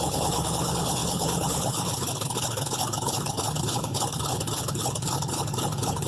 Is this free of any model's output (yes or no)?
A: no